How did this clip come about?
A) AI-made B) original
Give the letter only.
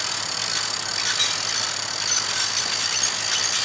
B